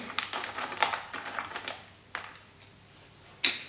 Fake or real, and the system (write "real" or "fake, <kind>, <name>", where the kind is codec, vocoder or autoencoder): real